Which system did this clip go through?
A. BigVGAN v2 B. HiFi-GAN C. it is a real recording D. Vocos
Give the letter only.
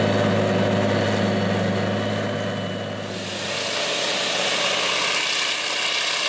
C